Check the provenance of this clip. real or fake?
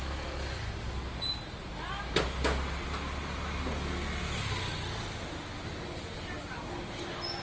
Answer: real